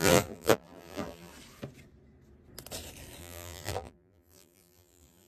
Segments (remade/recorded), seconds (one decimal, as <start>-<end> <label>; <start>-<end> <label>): 0.0-1.3 remade; 1.3-3.2 recorded; 3.2-5.3 remade